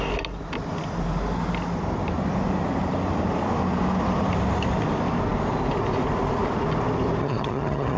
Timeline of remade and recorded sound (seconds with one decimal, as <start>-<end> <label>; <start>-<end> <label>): 0.0-7.2 recorded; 7.2-8.0 remade